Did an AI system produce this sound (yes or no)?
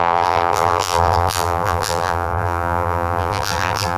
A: yes